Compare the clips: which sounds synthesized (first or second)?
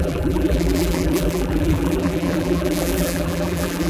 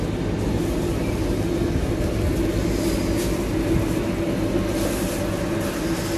first